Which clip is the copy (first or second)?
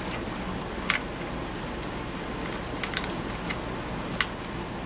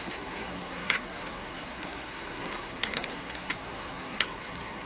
second